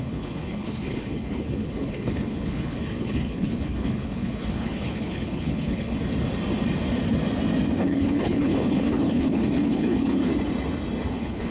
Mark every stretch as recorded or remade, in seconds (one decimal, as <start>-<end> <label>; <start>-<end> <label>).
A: 0.0-6.0 remade; 6.0-7.8 recorded; 7.8-10.3 remade; 10.3-11.1 recorded; 11.1-11.5 remade